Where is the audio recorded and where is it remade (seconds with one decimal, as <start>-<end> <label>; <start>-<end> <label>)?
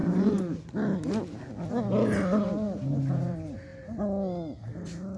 0.0-3.1 recorded; 3.1-3.7 remade; 3.7-5.2 recorded